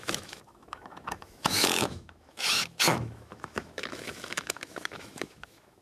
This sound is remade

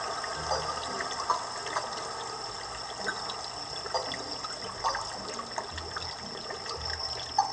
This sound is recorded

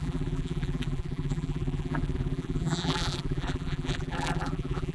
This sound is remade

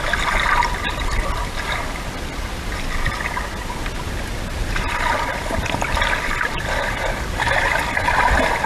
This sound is recorded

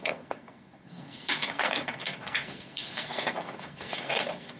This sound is remade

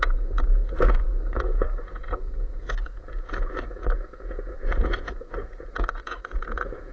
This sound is remade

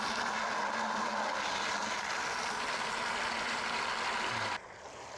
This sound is recorded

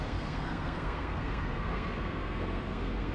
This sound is remade